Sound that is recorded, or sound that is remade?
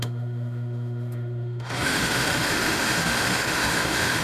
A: remade